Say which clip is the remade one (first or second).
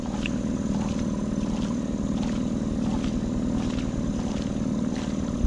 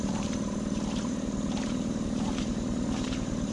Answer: second